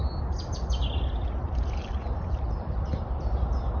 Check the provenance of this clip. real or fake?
real